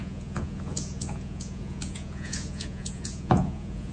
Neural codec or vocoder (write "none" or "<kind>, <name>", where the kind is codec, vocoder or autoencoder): vocoder, Vocos